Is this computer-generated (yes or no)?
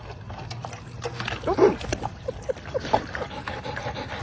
no